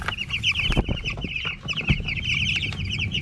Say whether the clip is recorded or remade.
recorded